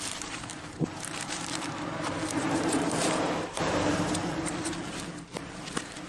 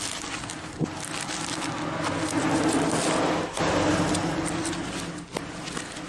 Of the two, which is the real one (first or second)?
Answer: second